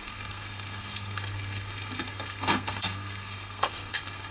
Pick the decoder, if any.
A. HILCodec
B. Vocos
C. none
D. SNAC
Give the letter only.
D